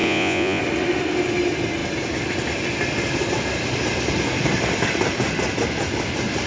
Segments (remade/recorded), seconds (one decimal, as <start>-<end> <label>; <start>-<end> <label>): 0.0-0.6 remade; 0.6-6.5 recorded